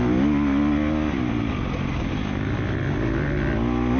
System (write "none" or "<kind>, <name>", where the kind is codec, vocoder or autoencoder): none